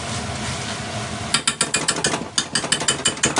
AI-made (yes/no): no